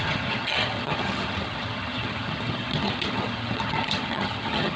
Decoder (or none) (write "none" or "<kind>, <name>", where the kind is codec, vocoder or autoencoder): vocoder, HiFi-GAN